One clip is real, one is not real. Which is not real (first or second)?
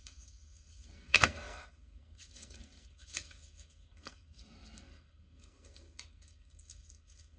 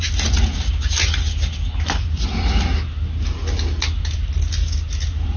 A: first